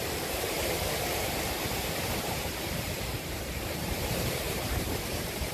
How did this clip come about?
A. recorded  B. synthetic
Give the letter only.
B